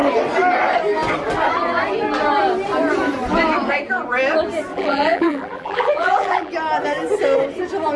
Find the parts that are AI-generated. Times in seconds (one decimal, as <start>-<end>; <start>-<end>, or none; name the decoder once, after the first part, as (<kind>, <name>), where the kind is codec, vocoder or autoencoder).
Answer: 4.7-6.5 (vocoder, BigVGAN v2)